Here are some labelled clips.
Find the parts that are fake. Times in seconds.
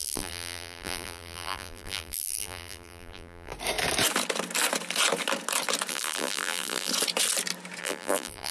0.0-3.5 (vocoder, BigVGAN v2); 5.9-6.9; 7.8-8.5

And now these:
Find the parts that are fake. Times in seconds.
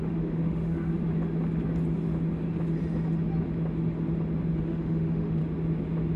0.0-0.9 (autoencoder, DAC-VAE); 4.6-5.4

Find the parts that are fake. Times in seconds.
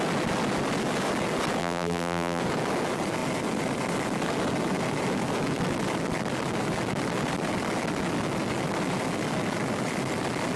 1.6-2.4 (vocoder, BigVGAN v2)